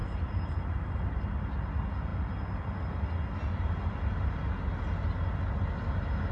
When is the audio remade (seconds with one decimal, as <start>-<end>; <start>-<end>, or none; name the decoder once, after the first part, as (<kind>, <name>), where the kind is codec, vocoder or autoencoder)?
0.0-0.6 (vocoder, BigVGAN v2)